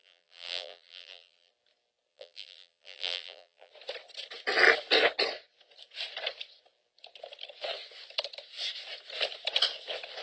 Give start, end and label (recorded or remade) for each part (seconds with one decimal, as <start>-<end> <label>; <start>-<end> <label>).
0.0-1.5 remade; 1.5-2.1 recorded; 2.1-3.7 remade; 3.7-10.2 recorded